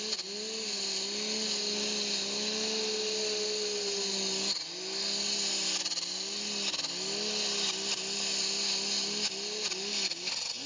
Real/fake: real